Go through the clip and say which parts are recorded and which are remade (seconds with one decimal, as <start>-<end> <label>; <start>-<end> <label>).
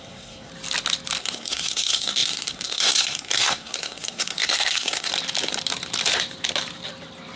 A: 0.0-0.5 remade; 0.5-1.2 recorded; 1.2-5.1 remade; 5.1-7.4 recorded